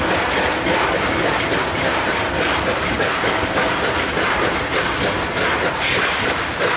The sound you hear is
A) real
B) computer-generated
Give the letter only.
A